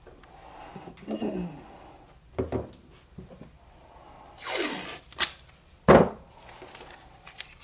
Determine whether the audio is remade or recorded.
recorded